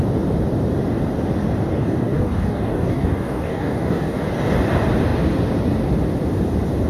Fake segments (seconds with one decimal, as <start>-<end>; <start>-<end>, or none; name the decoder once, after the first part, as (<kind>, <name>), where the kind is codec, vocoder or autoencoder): 1.7-4.2 (codec, DAC)